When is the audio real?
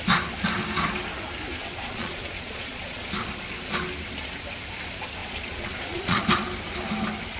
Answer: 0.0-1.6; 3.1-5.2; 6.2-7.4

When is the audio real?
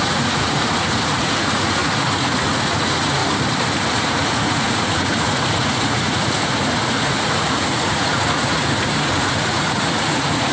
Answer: 3.2-3.9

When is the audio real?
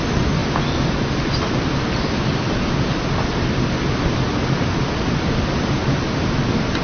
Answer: 0.0-6.8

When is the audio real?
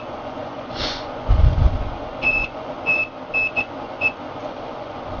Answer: 3.0-3.5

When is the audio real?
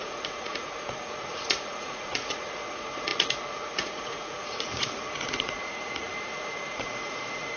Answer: none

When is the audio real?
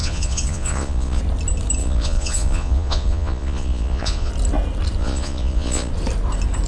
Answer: 1.2-1.8; 4.3-5.0; 5.9-6.7